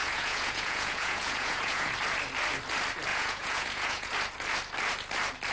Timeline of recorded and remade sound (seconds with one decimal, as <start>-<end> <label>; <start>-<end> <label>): 0.0-1.9 remade; 1.9-3.1 recorded; 3.1-4.1 remade; 4.1-5.5 recorded